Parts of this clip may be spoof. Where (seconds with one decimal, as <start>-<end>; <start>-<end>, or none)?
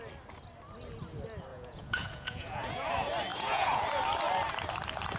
1.5-2.9; 3.3-3.8